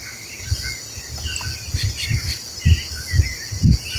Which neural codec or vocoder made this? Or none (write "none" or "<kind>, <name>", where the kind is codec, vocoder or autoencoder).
none